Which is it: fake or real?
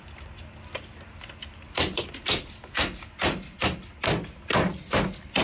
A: real